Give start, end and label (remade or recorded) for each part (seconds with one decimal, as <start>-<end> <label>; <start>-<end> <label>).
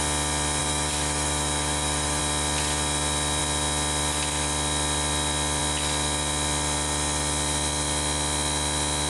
0.0-0.6 recorded; 0.6-2.2 remade; 2.2-9.1 recorded